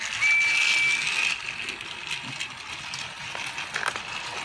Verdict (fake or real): real